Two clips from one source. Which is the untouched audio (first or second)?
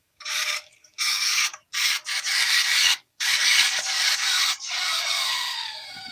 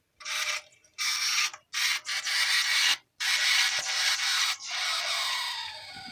second